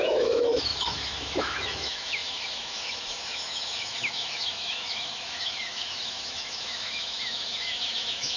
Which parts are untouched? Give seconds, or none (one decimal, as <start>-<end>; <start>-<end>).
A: none